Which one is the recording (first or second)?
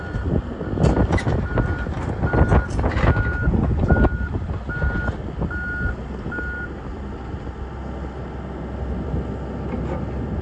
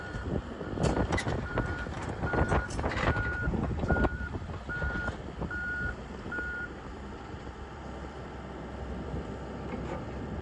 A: first